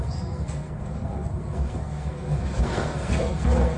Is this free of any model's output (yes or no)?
no